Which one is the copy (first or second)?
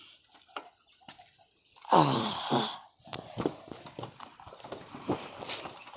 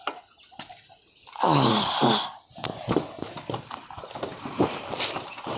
first